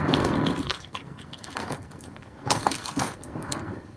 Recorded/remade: remade